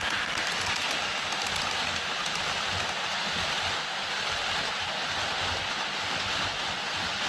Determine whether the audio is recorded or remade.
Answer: recorded